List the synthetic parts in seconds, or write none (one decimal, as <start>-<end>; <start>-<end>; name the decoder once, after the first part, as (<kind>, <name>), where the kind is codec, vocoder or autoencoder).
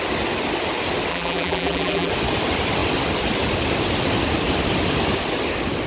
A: 1.1-2.1 (vocoder, BigVGAN v2)